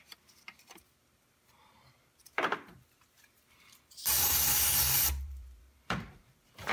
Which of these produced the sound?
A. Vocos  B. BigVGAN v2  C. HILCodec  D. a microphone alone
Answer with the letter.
B